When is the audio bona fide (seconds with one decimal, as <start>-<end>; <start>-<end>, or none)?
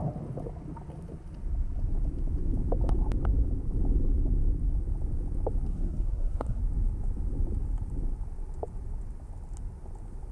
0.0-5.7; 6.6-10.3